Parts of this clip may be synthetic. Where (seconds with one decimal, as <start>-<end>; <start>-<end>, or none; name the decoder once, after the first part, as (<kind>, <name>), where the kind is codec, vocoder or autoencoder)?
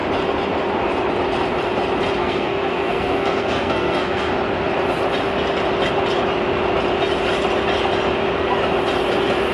2.2-4.3 (codec, SNAC)